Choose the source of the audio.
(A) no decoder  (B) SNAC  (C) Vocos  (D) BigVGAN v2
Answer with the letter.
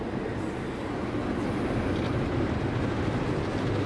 A